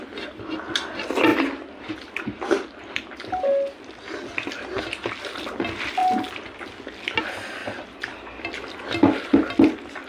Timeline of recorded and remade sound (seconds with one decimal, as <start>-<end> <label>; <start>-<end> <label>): 0.0-6.0 recorded; 6.0-6.6 remade; 6.6-7.6 recorded; 7.6-8.4 remade; 8.4-10.1 recorded